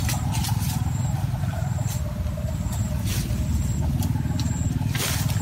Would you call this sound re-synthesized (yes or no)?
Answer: no